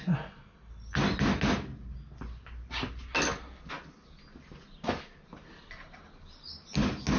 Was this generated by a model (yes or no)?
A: no